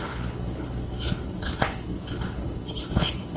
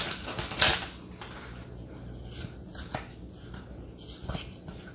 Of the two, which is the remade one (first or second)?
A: first